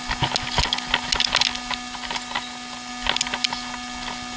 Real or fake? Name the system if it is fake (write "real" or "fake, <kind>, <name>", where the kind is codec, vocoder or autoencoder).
real